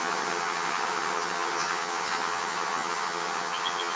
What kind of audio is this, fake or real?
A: fake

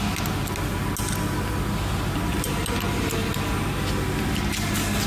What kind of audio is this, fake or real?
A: real